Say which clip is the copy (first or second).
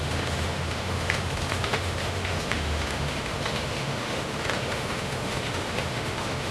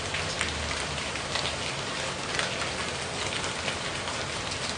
first